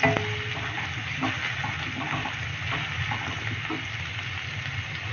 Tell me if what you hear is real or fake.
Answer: real